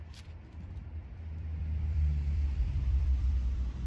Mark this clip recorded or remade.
remade